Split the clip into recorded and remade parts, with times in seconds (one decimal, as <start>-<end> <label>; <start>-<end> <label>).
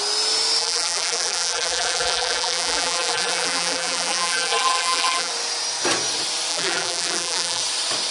0.0-0.6 recorded; 0.6-5.3 remade; 5.3-6.5 recorded; 6.5-7.6 remade; 7.6-8.1 recorded